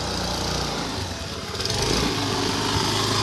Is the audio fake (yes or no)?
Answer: no